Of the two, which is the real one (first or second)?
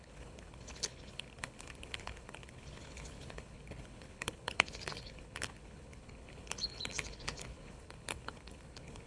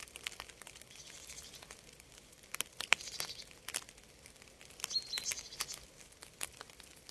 second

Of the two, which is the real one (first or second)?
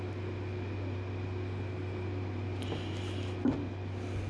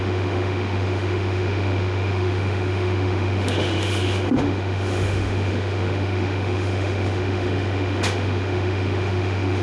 first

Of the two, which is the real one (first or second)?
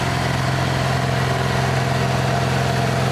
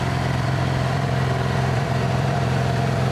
first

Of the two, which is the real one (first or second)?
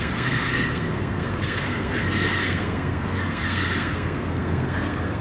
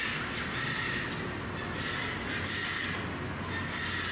second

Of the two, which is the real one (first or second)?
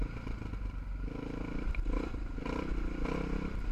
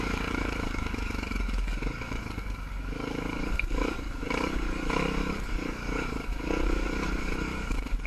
first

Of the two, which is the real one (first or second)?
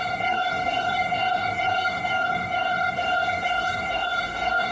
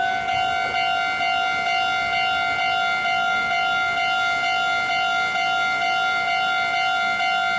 second